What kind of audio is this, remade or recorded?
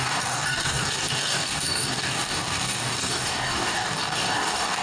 remade